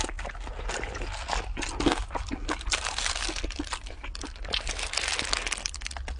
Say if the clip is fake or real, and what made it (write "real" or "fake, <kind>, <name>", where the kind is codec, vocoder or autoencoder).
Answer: real